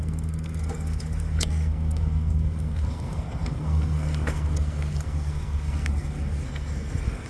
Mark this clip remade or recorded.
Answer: remade